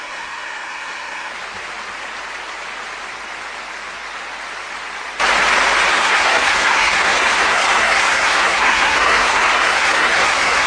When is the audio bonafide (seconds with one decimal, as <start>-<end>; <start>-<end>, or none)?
1.3-5.9